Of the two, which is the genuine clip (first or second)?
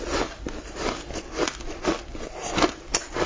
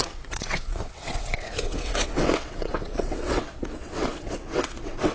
first